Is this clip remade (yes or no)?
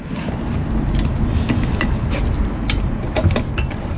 no